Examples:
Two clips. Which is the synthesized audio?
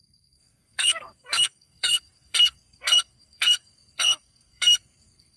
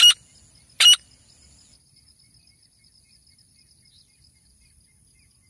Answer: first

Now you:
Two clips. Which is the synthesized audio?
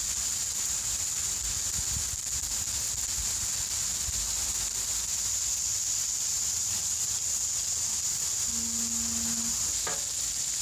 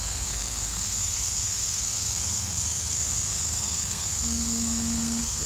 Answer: second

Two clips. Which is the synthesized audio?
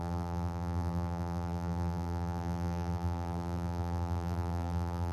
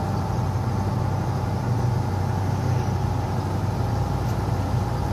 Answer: first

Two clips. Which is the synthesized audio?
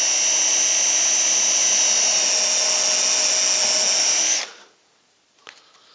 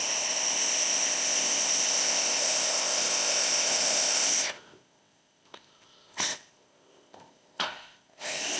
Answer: second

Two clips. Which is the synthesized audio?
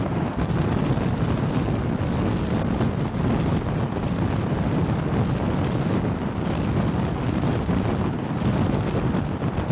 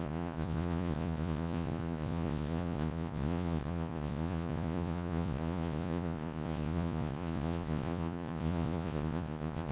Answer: second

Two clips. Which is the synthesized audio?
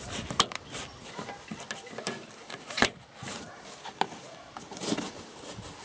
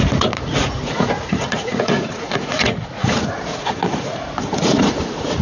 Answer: second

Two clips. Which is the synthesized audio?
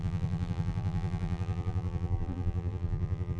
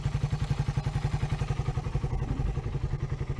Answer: first